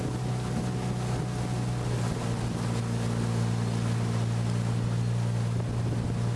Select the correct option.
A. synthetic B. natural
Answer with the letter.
B